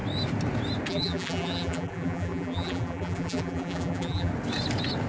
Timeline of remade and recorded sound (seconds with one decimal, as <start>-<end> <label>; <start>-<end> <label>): 0.0-0.9 recorded; 0.9-4.3 remade; 4.3-5.1 recorded